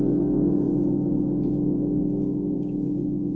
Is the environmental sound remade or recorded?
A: remade